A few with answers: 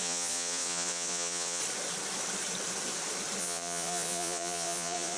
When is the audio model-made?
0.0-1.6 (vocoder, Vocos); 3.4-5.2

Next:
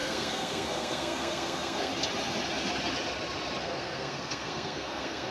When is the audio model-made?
0.0-1.9 (codec, SNAC); 3.6-5.3

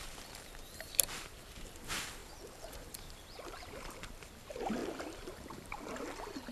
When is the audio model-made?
0.0-6.5 (vocoder, BigVGAN v2)

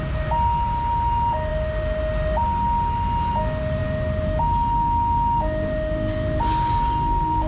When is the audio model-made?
none